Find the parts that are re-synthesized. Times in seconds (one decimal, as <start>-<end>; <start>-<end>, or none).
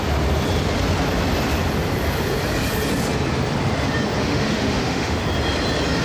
4.2-5.2